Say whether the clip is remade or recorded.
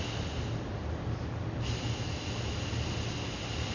recorded